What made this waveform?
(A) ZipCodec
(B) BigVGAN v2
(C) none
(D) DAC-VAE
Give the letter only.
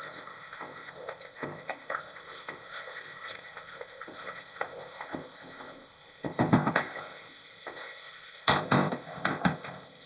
A